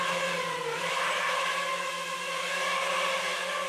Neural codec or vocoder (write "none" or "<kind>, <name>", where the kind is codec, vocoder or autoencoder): none